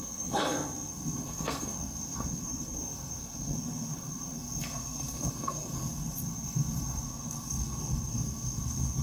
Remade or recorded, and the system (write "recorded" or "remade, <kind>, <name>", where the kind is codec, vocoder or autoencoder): remade, codec, SNAC